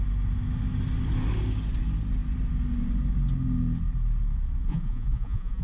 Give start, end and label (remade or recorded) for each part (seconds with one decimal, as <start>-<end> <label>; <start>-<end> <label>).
0.0-4.7 recorded; 4.7-5.6 remade